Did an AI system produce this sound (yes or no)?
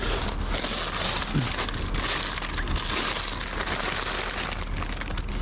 no